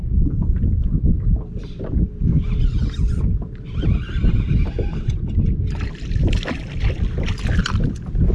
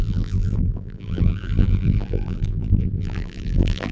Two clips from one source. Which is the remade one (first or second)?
second